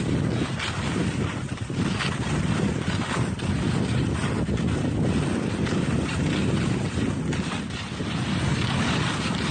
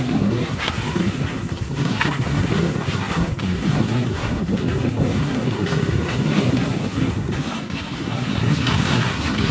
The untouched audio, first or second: first